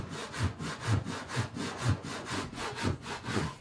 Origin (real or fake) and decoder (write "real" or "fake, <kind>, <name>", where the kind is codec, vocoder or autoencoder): fake, vocoder, Vocos